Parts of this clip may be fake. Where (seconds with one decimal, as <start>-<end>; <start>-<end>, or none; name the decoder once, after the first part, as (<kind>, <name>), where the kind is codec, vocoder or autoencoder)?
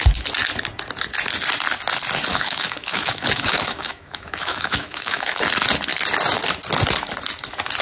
2.3-5.4 (autoencoder, DAC-VAE)